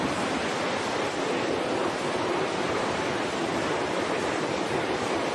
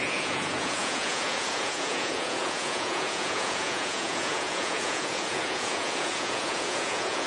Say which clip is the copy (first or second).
second